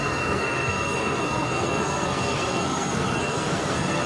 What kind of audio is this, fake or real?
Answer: fake